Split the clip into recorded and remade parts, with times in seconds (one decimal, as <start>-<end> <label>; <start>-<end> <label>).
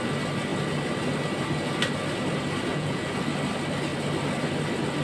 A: 0.0-2.7 recorded; 2.7-3.2 remade; 3.2-5.0 recorded